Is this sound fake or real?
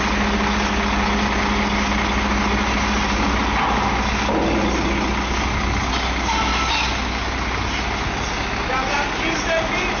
real